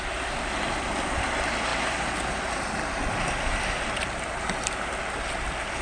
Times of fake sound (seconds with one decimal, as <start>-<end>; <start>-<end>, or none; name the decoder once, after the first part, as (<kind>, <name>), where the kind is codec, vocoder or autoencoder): none